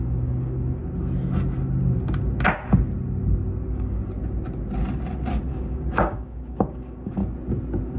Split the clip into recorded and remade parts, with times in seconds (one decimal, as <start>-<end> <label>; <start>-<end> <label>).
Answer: 0.0-0.8 remade; 0.8-3.6 recorded; 3.6-4.0 remade; 4.0-5.5 recorded; 5.5-7.2 remade; 7.2-8.0 recorded